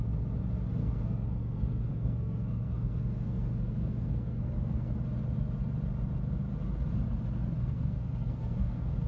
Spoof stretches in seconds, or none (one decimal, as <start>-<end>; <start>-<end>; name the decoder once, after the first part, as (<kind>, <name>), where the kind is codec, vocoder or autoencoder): 0.8-5.0 (codec, SNAC); 7.6-9.1